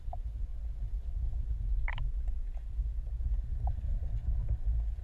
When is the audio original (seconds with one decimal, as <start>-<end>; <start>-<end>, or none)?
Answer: 0.0-5.0